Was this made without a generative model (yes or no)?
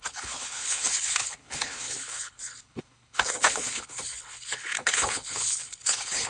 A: no